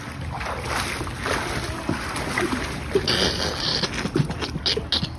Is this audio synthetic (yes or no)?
no